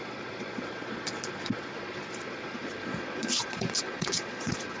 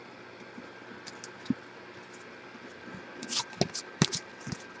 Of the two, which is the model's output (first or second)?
first